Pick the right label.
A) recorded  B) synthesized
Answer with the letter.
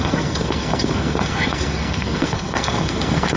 B